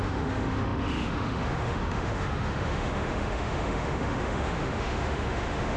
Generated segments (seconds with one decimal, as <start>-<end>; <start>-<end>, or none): 0.0-5.8